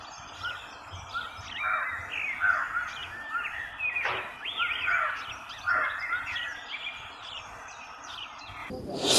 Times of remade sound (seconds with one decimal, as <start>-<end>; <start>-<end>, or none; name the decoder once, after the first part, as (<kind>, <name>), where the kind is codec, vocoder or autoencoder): none

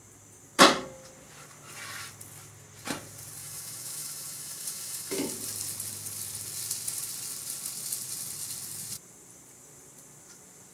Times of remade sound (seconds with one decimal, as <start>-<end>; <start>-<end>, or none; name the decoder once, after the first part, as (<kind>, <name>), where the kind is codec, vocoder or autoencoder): 3.4-5.3 (autoencoder, DAC-VAE)

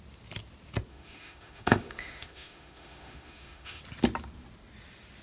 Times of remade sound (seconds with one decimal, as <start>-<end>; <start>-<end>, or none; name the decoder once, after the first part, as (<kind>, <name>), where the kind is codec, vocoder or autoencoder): 0.9-3.8 (autoencoder, DAC-VAE)

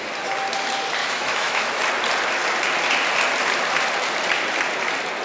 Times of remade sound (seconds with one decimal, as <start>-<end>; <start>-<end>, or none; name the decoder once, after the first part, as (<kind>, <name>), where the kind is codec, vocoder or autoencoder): 1.0-1.9 (autoencoder, DAC-VAE)